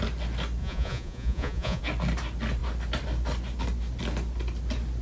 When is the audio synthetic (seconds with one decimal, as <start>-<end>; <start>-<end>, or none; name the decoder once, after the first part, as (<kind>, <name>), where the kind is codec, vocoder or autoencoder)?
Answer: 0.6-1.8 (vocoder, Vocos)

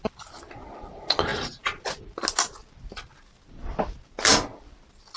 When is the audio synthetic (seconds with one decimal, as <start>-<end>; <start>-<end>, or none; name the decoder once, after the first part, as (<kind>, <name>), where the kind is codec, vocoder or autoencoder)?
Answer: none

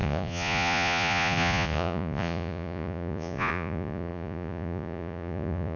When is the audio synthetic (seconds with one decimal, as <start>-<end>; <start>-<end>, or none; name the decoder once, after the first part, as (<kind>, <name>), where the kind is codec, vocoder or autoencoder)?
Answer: 0.0-5.8 (vocoder, Vocos)

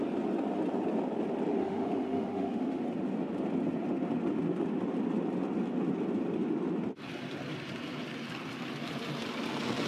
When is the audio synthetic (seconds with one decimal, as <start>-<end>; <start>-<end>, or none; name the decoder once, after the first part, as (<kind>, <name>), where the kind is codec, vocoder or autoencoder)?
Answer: 1.6-2.8 (autoencoder, DAC-VAE)

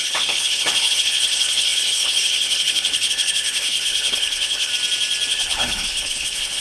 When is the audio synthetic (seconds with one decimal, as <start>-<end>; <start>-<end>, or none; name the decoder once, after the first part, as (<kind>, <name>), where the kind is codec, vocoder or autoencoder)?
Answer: 0.0-4.7 (codec, HILCodec); 5.3-6.6